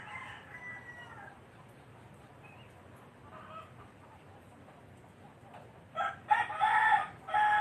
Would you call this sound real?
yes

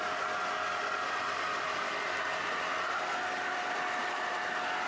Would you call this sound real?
yes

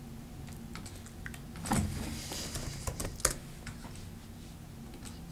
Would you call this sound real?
yes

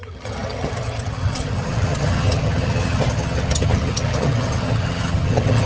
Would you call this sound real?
no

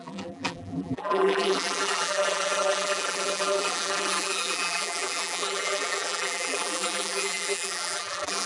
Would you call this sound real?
no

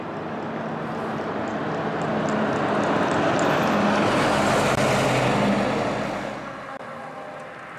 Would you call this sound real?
yes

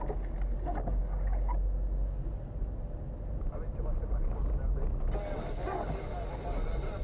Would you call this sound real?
yes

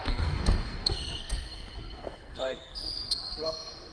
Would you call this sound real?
no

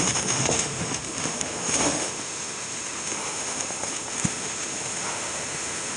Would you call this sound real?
no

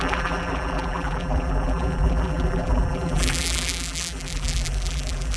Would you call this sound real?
no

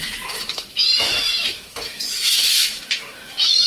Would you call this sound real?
no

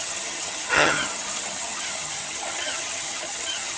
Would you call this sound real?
no